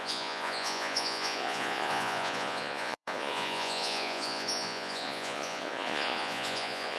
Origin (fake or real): fake